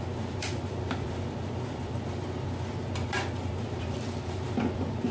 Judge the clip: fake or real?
fake